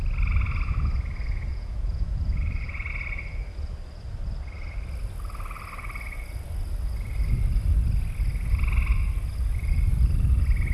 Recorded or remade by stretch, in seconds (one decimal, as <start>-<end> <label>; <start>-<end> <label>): 0.0-1.5 recorded; 1.5-2.9 remade; 2.9-10.7 recorded